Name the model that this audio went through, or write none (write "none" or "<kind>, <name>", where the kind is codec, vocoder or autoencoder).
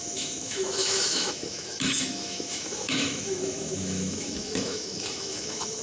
autoencoder, DAC-VAE